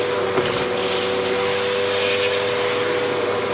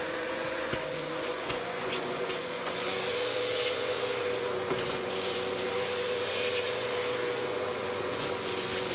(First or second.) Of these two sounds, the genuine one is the first